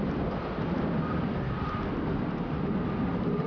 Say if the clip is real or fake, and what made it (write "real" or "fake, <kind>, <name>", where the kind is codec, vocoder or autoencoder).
real